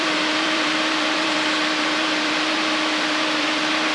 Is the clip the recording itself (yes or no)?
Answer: no